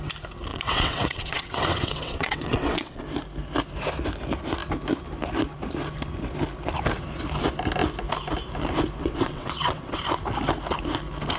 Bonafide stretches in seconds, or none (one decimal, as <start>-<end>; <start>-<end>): 0.0-0.5; 3.0-9.0; 10.0-11.4